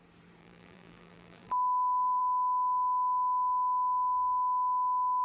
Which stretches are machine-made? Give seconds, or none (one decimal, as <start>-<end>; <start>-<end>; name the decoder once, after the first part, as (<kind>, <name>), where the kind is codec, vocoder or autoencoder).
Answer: 0.4-2.2 (vocoder, BigVGAN v2)